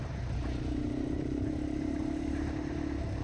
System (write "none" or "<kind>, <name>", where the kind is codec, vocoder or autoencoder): vocoder, BigVGAN v2